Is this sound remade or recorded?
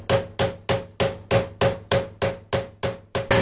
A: recorded